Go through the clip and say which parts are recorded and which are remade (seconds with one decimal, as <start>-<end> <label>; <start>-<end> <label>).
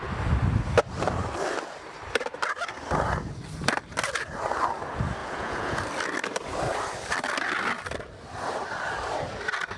0.0-5.2 recorded; 5.2-5.8 remade; 5.8-9.8 recorded